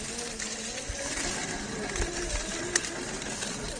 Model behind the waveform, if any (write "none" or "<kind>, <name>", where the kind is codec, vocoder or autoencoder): none